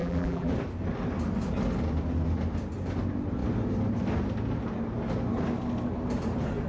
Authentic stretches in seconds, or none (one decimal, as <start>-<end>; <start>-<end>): 0.5-6.7